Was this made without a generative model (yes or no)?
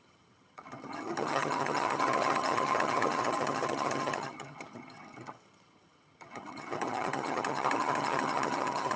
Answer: no